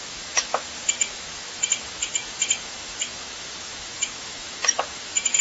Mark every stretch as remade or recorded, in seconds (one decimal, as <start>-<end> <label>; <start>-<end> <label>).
0.0-0.5 remade; 0.5-1.1 recorded; 1.1-5.4 remade